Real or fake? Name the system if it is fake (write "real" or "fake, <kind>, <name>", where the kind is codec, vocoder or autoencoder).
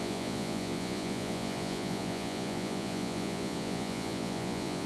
fake, vocoder, Vocos